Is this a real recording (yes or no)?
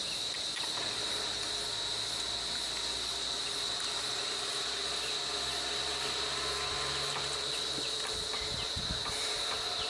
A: yes